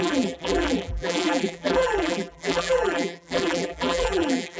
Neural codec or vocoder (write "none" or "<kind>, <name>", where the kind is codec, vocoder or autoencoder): vocoder, BigVGAN v2